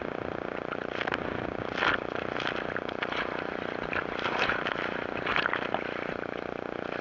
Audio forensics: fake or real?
real